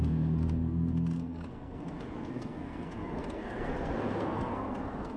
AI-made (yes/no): yes